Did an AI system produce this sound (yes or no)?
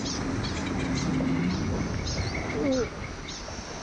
no